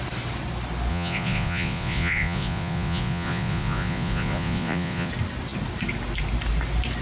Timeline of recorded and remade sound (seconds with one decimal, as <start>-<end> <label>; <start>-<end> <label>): 0.0-0.9 recorded; 0.9-5.1 remade; 5.1-7.0 recorded